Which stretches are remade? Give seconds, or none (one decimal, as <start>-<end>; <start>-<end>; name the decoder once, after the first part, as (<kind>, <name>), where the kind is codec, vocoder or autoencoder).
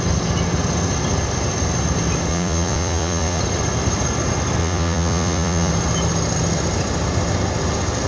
2.3-3.4 (vocoder, Vocos); 4.6-5.7